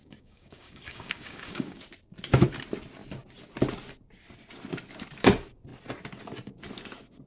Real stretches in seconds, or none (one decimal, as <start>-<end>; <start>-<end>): 1.8-7.3